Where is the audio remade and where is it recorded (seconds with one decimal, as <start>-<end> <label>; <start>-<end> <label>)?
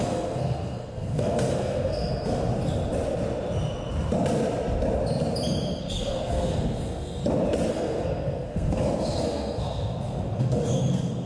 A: 0.0-2.5 remade; 2.5-5.8 recorded; 5.8-7.2 remade; 7.2-7.7 recorded; 7.7-11.3 remade